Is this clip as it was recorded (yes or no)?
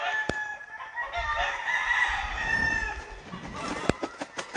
yes